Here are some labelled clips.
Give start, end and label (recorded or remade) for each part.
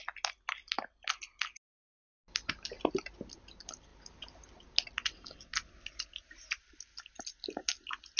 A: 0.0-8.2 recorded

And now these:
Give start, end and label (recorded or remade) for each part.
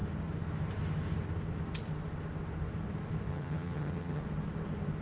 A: 0.0-3.3 recorded; 3.3-4.2 remade; 4.2-5.0 recorded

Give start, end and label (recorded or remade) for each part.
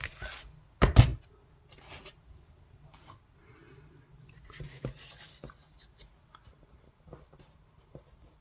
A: 0.0-8.4 recorded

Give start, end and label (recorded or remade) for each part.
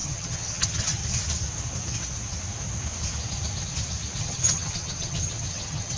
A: 0.0-1.0 remade; 1.0-4.2 recorded; 4.2-6.0 remade